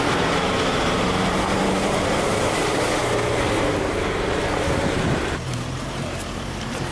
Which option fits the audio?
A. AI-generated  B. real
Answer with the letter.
A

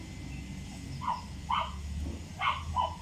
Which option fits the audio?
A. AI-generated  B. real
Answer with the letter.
B